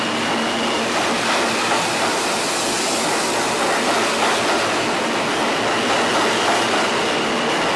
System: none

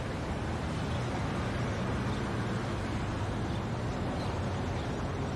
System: none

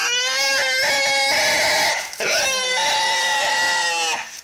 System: none